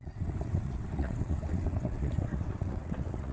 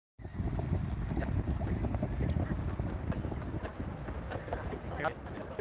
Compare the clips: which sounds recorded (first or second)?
second